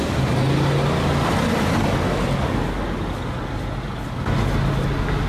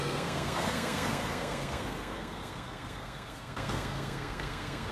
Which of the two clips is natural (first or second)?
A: first